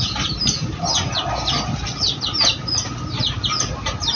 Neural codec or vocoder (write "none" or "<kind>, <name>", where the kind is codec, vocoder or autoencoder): none